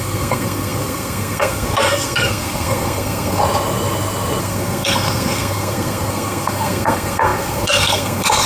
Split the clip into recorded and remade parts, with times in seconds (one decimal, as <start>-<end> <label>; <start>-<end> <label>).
0.0-3.4 remade; 3.4-4.4 recorded; 4.4-8.5 remade